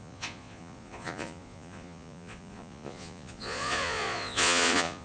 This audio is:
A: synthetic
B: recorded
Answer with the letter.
A